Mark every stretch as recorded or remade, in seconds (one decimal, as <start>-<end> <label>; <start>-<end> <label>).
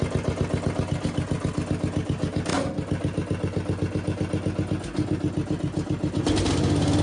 0.0-7.0 recorded